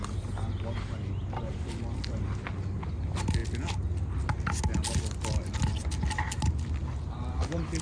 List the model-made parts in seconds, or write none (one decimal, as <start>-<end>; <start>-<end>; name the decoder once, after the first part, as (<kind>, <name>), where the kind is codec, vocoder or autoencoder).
none